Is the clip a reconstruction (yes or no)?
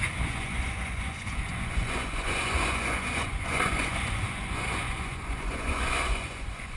yes